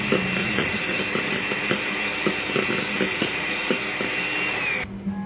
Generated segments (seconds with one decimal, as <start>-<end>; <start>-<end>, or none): 0.4-1.0; 3.1-3.7